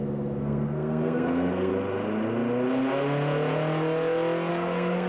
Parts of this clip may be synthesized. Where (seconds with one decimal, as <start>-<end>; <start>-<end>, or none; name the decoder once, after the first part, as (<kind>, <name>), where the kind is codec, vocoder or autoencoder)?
0.0-1.7 (codec, SNAC); 4.5-5.1